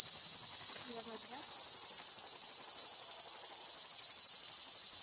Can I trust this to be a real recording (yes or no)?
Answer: yes